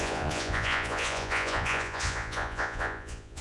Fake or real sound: fake